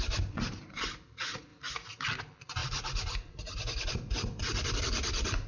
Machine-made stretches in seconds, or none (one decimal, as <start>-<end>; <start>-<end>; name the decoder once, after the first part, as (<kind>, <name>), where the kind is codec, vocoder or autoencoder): none